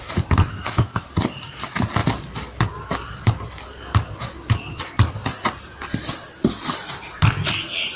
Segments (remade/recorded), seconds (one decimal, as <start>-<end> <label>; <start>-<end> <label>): 0.0-0.5 recorded; 0.5-1.1 remade; 1.1-8.0 recorded